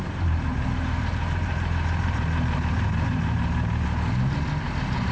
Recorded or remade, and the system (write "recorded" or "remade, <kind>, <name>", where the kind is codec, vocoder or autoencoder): remade, vocoder, BigVGAN v2